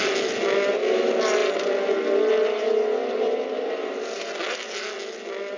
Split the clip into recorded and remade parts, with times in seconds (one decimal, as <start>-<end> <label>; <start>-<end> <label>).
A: 0.0-5.6 recorded